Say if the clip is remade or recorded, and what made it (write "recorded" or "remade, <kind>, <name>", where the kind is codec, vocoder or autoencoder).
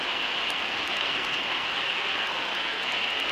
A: remade, codec, SNAC